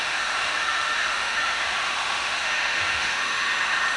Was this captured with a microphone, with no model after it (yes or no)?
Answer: no